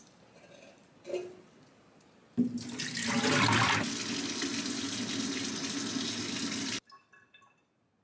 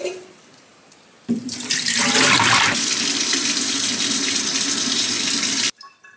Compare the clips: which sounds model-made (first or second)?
second